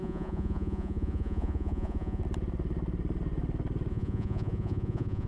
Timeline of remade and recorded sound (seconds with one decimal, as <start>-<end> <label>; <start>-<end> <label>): 0.0-2.2 remade; 2.2-3.9 recorded; 3.9-5.3 remade